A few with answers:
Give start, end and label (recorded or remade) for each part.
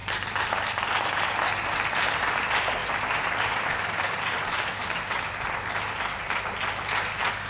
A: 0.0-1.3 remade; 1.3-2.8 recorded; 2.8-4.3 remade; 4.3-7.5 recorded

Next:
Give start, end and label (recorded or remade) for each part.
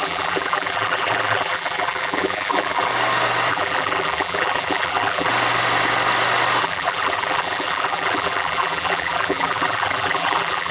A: 0.0-2.9 remade; 2.9-3.5 recorded; 3.5-5.3 remade; 5.3-6.6 recorded; 6.6-10.7 remade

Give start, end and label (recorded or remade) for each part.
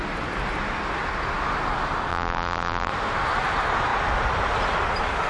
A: 0.0-2.1 recorded; 2.1-2.9 remade; 2.9-5.3 recorded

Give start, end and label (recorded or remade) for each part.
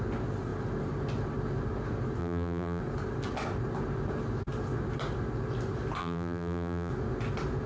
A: 0.0-2.2 recorded; 2.2-2.8 remade; 2.8-6.0 recorded; 6.0-6.9 remade; 6.9-7.7 recorded